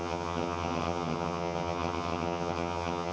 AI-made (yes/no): yes